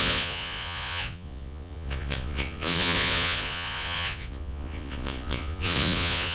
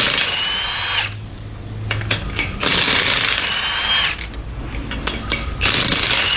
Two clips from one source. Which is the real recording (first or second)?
second